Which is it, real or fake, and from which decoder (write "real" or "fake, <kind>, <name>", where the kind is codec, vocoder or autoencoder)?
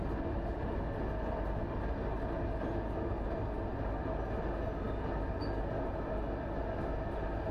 real